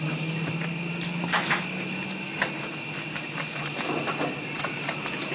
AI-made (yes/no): no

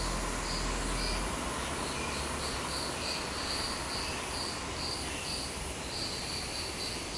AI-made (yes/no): no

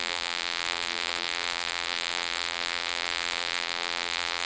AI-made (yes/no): yes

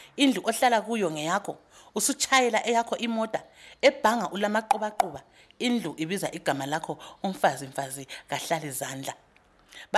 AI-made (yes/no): no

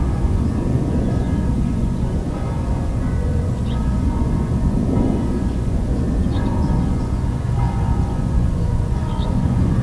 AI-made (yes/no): yes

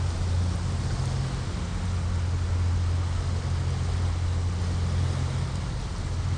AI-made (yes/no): no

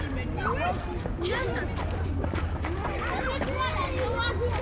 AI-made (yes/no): no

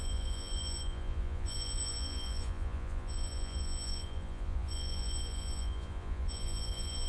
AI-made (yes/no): yes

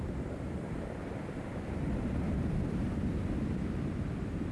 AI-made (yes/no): yes